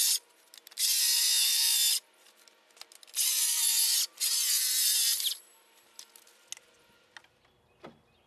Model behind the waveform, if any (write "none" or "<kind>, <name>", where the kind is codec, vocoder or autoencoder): none